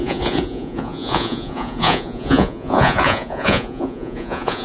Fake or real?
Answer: fake